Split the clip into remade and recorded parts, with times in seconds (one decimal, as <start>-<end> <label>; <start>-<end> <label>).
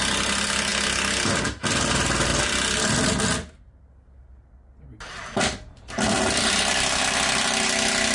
0.0-8.1 recorded